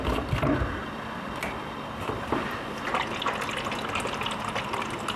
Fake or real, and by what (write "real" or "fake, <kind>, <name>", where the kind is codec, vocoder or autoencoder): real